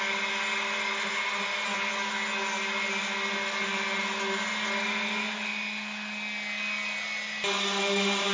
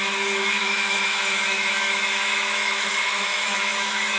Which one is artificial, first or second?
second